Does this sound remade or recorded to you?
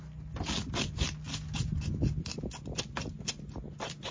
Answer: recorded